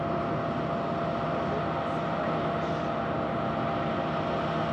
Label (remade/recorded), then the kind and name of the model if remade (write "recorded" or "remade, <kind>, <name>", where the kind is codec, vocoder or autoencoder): recorded